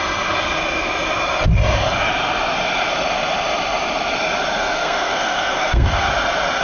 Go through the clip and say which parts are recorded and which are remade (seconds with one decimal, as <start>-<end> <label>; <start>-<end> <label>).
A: 0.0-4.6 recorded; 4.6-6.1 remade; 6.1-6.6 recorded